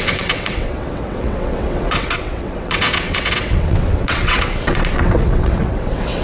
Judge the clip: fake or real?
fake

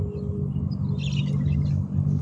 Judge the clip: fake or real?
real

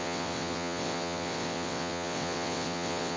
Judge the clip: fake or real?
fake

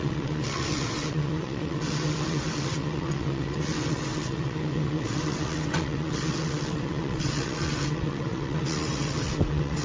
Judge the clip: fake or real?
fake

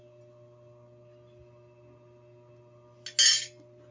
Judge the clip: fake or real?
real